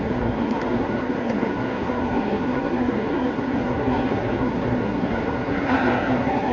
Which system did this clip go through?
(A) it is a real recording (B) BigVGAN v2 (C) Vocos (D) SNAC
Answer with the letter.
D